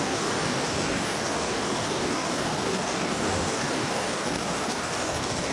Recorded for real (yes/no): no